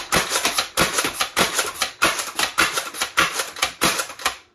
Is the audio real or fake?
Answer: fake